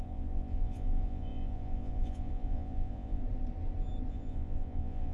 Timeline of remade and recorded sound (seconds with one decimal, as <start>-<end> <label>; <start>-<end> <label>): 0.0-3.2 remade; 3.2-4.1 recorded; 4.1-5.1 remade